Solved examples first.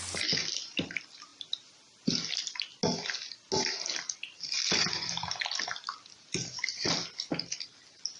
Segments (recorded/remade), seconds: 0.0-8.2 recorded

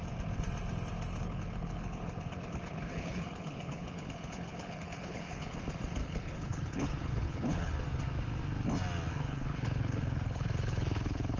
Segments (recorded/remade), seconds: 0.0-1.1 recorded; 1.1-5.6 remade; 5.6-6.0 recorded; 6.0-7.7 remade; 7.7-9.1 recorded; 9.1-11.4 remade